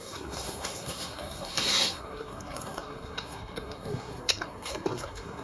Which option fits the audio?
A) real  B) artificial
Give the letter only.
B